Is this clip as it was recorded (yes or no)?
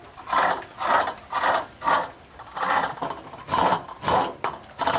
yes